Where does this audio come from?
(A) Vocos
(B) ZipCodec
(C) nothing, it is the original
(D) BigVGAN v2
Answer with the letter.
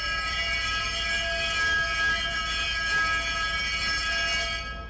C